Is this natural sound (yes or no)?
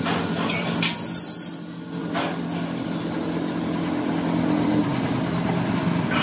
yes